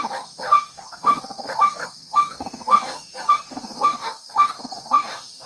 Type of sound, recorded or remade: remade